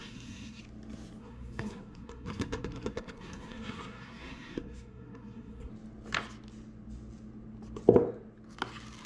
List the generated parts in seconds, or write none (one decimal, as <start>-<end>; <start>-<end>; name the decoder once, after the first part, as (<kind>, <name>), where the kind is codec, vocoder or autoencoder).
0.0-0.6 (codec, SNAC); 1.2-5.7